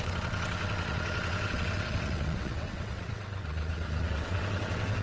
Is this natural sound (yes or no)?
no